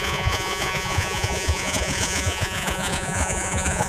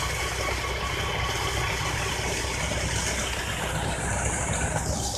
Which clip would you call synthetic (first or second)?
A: first